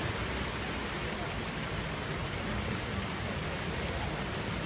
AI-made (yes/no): no